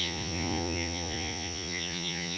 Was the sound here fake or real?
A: fake